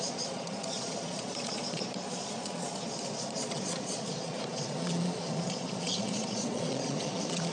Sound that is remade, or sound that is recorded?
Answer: remade